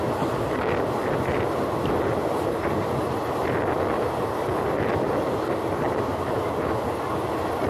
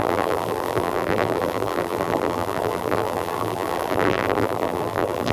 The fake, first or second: second